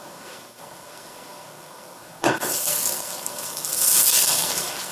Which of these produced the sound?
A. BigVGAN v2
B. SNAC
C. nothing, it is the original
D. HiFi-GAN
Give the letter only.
B